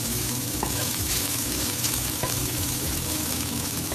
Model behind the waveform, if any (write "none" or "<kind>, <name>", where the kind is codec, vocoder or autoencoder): autoencoder, DAC-VAE